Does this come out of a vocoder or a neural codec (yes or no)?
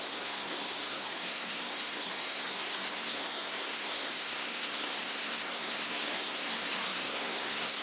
yes